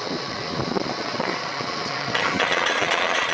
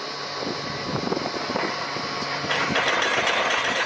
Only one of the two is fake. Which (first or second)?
first